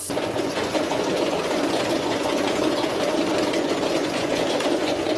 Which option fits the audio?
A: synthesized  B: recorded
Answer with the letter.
A